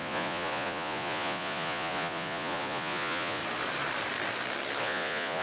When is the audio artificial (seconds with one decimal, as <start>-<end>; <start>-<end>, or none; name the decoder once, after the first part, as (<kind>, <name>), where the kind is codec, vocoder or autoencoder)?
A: 0.0-3.4 (vocoder, Vocos); 4.8-5.4